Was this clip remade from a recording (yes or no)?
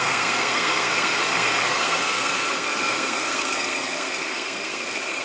yes